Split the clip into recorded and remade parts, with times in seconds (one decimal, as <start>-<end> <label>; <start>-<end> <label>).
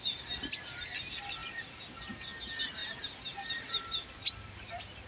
0.0-5.1 recorded